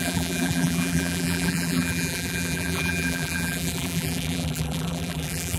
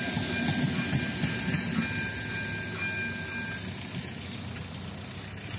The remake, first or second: first